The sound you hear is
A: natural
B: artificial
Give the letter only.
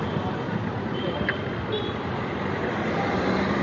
A